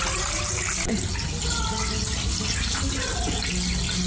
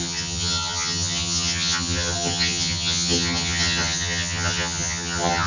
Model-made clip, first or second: second